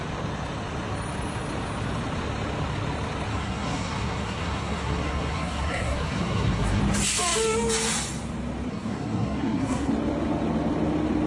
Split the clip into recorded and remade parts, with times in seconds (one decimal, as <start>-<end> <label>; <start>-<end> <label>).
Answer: 0.0-3.3 recorded; 3.3-6.8 remade; 6.8-8.7 recorded; 8.7-9.9 remade; 9.9-11.3 recorded